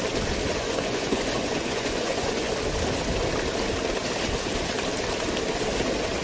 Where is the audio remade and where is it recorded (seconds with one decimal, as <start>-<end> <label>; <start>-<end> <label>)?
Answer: 0.0-0.5 recorded; 0.5-2.5 remade; 2.5-6.2 recorded